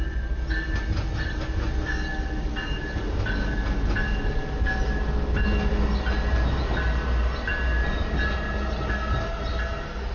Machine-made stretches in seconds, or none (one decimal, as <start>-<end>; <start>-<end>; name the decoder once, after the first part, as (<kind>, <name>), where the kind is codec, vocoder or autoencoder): none

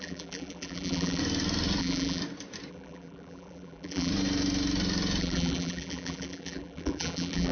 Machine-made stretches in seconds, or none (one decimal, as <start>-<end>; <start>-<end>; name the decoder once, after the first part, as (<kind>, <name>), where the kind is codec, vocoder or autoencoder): 0.0-1.2 (vocoder, BigVGAN v2); 1.8-2.2; 2.7-4.1; 5.2-7.5

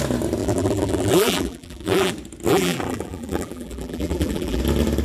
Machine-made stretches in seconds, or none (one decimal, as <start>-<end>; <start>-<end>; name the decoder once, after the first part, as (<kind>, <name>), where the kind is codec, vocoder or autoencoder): 0.4-2.1 (vocoder, BigVGAN v2); 2.5-4.6

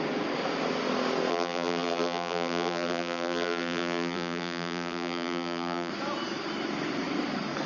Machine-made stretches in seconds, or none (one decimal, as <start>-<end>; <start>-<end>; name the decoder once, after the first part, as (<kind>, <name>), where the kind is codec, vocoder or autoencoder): 1.3-5.9 (vocoder, BigVGAN v2)

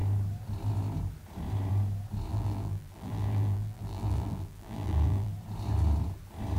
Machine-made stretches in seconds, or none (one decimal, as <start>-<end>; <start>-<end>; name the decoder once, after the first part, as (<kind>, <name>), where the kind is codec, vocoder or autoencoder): 2.3-5.3 (vocoder, BigVGAN v2)